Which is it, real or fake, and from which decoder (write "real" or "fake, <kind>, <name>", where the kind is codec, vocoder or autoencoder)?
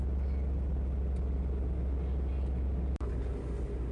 real